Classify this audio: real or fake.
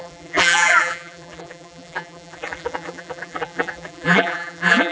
fake